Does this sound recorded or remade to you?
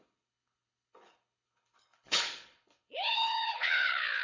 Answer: remade